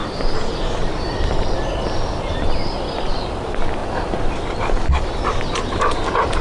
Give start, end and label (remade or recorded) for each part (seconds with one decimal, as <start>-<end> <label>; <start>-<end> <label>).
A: 0.0-6.4 recorded